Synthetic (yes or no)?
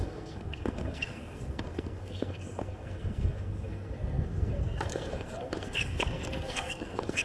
yes